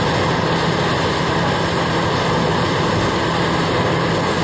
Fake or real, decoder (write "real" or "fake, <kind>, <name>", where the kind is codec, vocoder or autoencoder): real